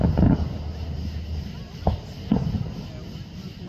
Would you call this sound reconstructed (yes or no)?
no